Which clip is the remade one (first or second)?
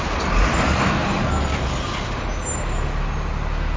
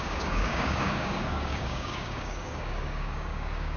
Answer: second